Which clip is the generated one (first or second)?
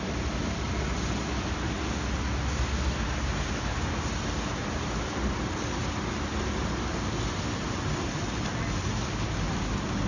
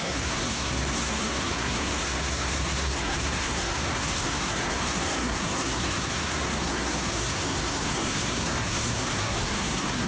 second